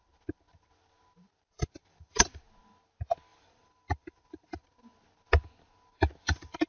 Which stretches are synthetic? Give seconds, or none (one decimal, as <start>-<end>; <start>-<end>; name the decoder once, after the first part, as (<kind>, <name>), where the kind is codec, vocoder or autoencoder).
1.8-2.4 (vocoder, BigVGAN v2); 3.3-4.5